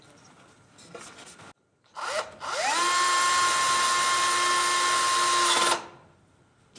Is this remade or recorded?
recorded